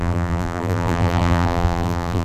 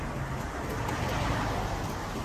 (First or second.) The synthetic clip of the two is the first